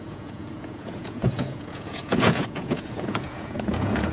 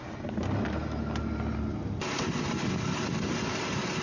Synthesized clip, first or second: first